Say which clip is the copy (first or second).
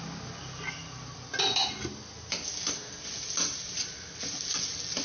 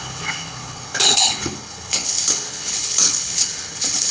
second